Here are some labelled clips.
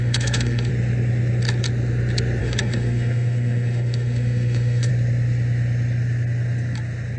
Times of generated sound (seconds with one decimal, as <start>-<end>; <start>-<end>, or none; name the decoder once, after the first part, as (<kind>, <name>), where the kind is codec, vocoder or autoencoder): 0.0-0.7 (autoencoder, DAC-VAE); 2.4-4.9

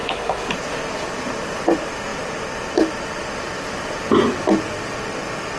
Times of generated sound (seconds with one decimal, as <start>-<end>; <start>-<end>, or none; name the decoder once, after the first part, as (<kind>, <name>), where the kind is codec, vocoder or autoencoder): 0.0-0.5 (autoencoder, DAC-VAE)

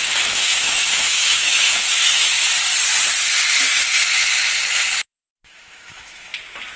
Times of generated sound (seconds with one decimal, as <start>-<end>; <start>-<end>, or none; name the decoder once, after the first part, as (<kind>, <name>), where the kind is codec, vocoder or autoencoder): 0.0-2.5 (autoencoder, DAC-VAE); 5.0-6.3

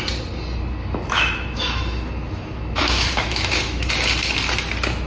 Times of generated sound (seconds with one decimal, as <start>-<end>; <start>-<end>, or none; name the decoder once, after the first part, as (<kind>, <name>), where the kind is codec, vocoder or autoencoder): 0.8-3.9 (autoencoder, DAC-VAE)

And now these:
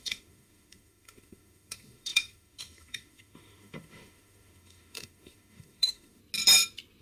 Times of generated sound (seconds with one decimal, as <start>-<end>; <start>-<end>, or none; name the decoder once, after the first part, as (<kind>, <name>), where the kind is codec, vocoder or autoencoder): 0.0-6.2 (autoencoder, DAC-VAE)